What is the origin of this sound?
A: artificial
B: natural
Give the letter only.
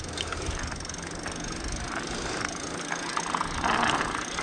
B